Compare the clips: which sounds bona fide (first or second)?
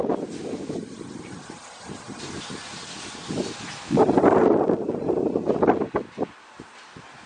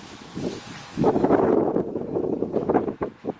first